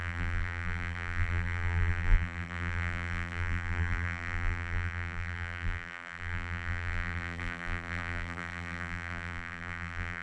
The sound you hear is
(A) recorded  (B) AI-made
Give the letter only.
B